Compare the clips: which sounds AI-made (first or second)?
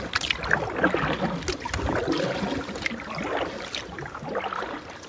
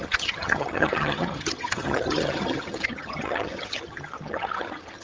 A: second